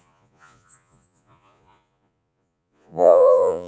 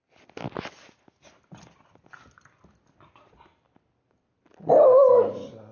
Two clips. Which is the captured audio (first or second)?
second